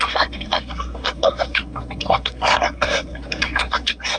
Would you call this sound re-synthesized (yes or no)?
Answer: yes